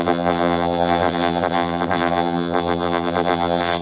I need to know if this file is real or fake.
fake